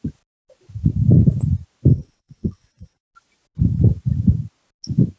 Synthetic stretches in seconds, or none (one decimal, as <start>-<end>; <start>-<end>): 1.9-3.0